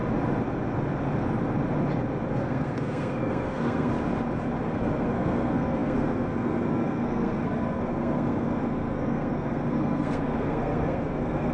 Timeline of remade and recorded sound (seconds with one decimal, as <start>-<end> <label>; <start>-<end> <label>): 0.0-2.3 recorded; 2.3-3.9 remade; 3.9-4.6 recorded; 4.6-11.5 remade